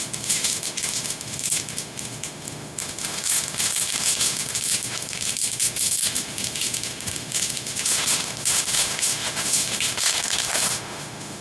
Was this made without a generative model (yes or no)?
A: no